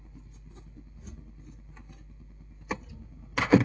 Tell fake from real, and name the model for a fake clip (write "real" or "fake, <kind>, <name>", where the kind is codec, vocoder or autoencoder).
real